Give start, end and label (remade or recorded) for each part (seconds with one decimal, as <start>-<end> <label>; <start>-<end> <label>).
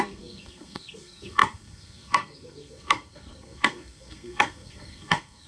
0.0-5.5 remade